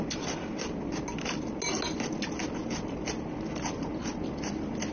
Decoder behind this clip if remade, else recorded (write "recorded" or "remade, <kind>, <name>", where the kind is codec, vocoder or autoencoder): recorded